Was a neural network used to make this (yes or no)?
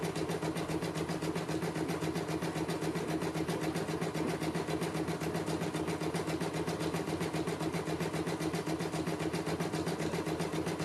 no